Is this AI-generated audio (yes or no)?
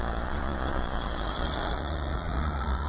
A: yes